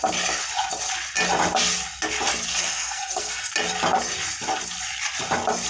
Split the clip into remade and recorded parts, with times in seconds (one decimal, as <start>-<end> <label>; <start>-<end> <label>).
0.0-2.5 recorded; 2.5-3.5 remade; 3.5-5.7 recorded